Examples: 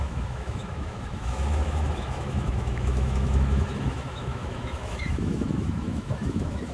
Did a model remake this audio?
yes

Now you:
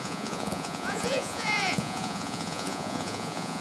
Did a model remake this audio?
yes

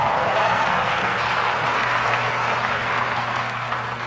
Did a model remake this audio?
yes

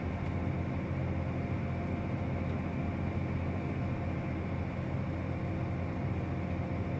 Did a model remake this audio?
no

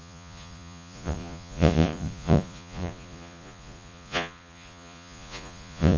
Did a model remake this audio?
yes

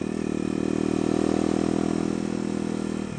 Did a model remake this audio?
no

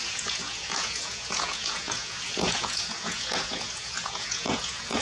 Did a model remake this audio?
yes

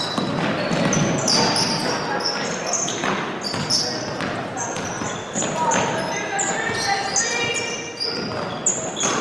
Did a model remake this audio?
no